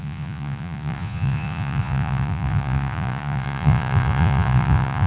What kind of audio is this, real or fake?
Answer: fake